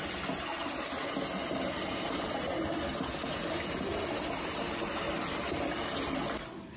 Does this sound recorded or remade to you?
recorded